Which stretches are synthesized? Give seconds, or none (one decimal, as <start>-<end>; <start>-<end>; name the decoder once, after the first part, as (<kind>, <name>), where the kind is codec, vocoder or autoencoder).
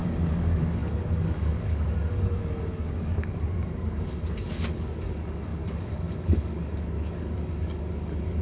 0.0-8.4 (codec, DAC)